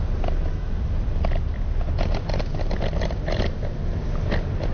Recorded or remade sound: recorded